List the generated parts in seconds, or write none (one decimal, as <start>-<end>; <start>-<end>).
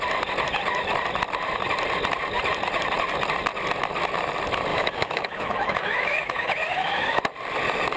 4.7-7.2